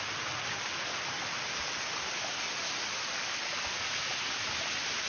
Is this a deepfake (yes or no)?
no